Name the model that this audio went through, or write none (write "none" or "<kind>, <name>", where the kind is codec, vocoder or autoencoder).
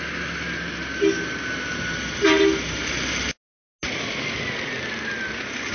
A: none